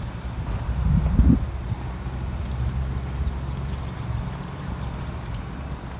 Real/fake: real